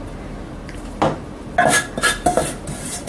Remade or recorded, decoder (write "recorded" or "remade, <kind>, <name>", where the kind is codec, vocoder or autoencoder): recorded